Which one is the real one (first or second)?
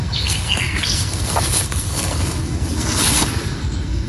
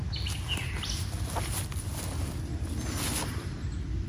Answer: second